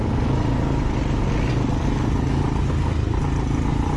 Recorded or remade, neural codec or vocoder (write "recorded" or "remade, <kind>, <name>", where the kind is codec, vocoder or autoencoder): recorded